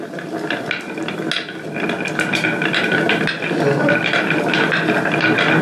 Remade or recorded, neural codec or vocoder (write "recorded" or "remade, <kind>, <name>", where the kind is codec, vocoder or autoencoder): recorded